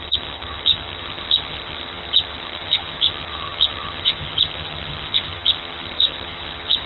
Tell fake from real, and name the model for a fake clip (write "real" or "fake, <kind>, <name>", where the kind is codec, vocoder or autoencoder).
fake, vocoder, HiFi-GAN